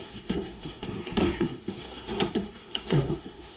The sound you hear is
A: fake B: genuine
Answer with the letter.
A